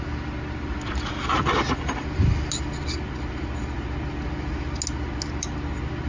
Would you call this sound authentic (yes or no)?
yes